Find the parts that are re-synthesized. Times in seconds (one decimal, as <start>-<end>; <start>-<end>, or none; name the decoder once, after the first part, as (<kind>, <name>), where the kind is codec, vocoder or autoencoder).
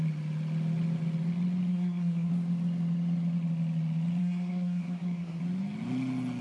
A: 1.7-2.3 (codec, SNAC); 4.2-5.4